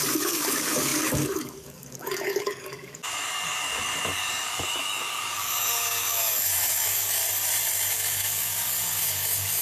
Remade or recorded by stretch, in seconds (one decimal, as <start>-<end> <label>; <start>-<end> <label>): 0.0-7.2 remade; 7.2-7.9 recorded; 7.9-9.6 remade